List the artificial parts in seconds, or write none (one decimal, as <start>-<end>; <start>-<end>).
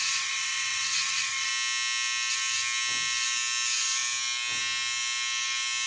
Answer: 0.0-1.5